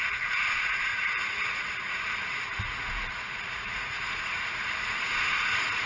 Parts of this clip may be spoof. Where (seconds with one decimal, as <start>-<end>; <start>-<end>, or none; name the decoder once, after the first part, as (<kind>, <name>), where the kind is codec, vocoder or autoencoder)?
0.0-5.9 (vocoder, Vocos)